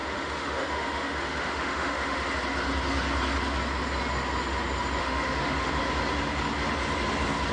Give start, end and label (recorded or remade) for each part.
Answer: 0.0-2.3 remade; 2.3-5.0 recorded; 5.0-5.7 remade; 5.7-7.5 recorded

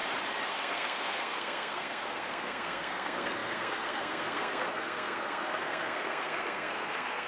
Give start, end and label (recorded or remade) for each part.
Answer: 0.0-0.5 recorded; 0.5-7.3 remade

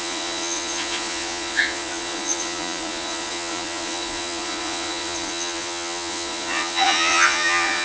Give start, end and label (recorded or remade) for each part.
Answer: 0.0-7.8 remade